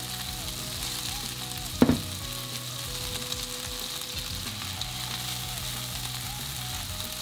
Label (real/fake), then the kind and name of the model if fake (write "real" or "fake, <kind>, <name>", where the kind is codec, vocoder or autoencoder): real